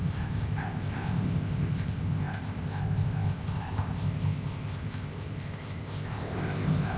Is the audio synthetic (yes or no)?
yes